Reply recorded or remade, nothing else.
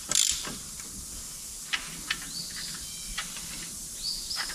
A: recorded